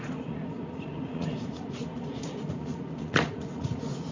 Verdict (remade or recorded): remade